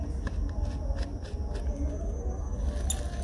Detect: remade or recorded recorded